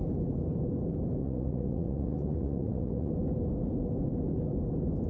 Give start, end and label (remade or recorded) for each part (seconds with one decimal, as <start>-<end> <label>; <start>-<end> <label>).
0.0-1.2 recorded; 1.2-3.1 remade; 3.1-5.1 recorded